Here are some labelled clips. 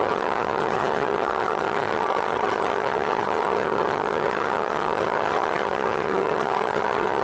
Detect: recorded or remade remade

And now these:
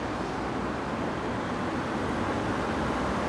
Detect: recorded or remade recorded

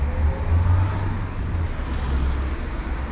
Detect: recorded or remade recorded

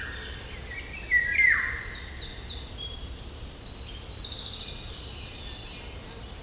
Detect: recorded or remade recorded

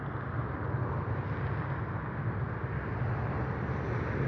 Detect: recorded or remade recorded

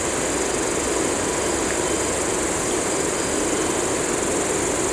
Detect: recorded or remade recorded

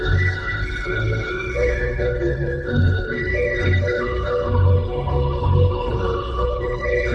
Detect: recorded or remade remade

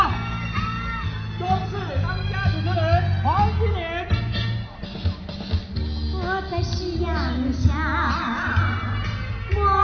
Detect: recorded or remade recorded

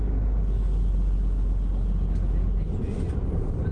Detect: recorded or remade recorded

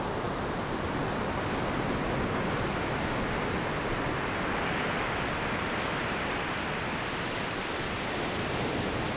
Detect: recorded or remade recorded